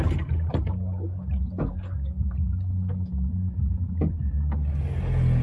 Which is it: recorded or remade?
recorded